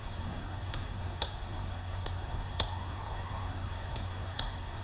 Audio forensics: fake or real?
fake